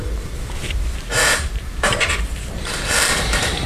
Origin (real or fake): fake